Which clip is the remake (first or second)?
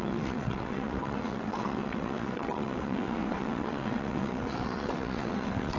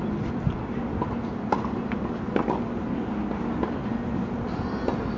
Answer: first